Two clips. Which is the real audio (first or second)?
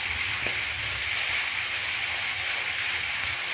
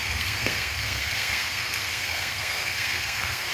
first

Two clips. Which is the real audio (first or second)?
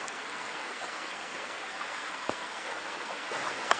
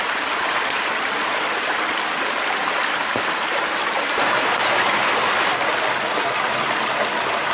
second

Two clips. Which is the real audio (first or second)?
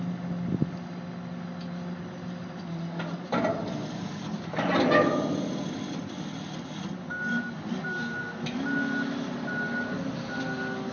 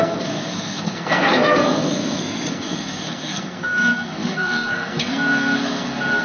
first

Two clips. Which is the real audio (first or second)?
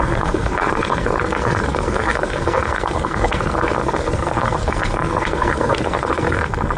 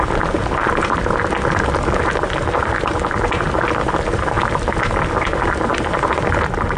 second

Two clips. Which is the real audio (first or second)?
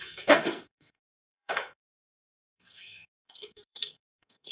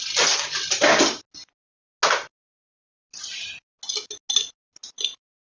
second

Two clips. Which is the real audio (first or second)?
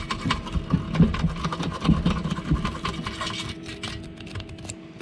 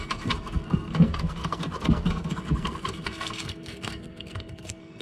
first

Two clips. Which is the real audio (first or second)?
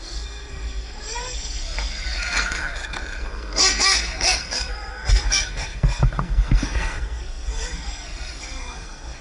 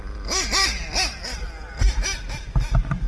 second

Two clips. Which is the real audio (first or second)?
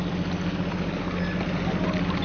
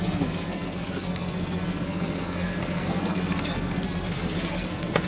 first